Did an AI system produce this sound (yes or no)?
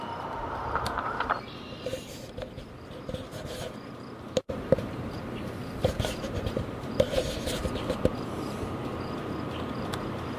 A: yes